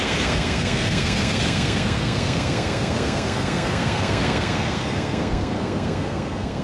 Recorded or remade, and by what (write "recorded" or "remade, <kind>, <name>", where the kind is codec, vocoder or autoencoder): remade, codec, SNAC